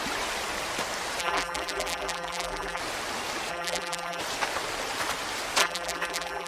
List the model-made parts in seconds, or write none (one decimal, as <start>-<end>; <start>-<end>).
1.2-2.8; 3.5-4.2; 5.6-6.5